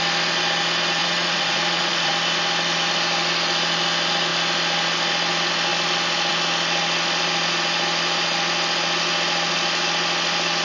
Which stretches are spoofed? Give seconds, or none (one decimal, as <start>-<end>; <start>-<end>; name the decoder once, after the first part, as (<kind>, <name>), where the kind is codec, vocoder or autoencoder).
1.0-2.1 (vocoder, Vocos)